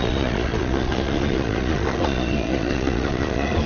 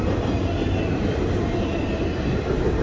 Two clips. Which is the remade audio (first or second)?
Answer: first